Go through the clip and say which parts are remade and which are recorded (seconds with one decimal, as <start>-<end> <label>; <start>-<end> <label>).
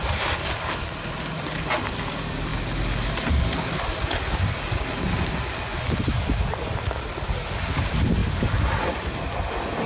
0.0-2.5 remade; 2.5-7.3 recorded; 7.3-8.2 remade; 8.2-8.8 recorded; 8.8-9.9 remade